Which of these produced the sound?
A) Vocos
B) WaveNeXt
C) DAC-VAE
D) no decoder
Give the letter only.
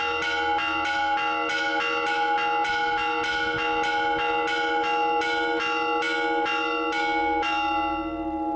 D